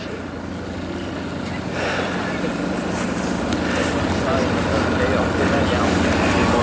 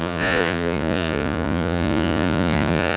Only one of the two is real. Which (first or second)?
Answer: first